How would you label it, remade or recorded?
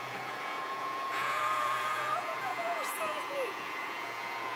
remade